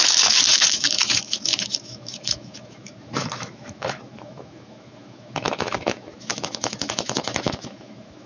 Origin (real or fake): fake